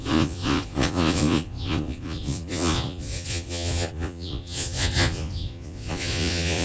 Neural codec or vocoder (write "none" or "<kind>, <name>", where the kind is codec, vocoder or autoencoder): vocoder, Vocos